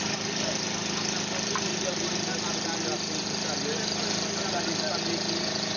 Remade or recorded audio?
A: recorded